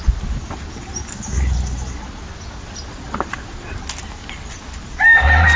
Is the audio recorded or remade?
recorded